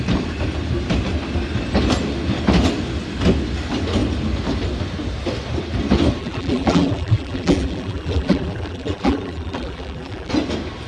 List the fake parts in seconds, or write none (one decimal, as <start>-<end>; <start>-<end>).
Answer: 6.2-10.3